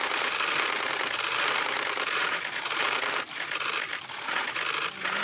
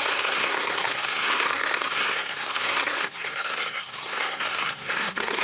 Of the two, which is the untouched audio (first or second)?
first